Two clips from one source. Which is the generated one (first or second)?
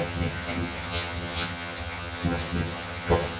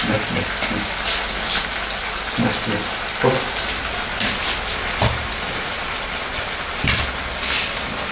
first